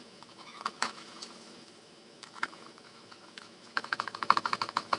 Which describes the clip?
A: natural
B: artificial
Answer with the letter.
B